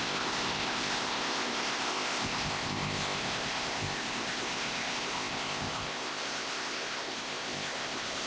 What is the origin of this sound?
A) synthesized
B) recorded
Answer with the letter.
A